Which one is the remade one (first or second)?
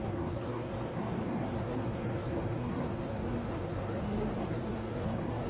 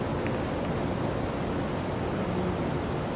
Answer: first